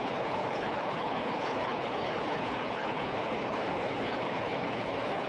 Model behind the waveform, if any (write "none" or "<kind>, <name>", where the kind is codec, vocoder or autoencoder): codec, HILCodec